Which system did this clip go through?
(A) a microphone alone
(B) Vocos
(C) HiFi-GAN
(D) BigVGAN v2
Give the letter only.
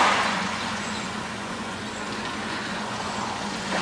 B